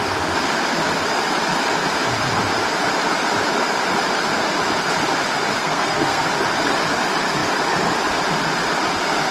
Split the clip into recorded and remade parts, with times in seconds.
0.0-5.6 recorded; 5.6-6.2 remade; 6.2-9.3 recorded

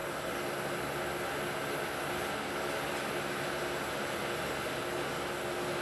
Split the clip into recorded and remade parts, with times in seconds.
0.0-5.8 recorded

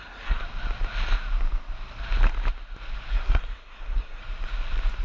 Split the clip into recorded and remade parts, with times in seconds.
0.0-0.4 remade; 0.4-3.1 recorded; 3.1-4.2 remade; 4.2-5.0 recorded